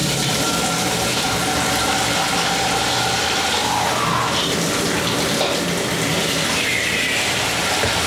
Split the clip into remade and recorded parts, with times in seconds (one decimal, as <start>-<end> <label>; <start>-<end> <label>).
0.0-1.4 remade; 1.4-6.1 recorded; 6.1-7.1 remade; 7.1-8.1 recorded